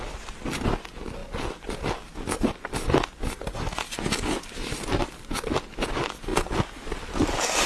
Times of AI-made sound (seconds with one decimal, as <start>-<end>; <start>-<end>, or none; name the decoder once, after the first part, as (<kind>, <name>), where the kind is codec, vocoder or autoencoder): none